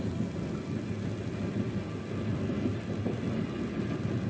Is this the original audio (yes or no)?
yes